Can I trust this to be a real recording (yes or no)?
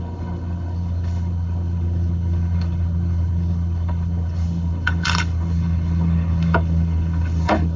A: no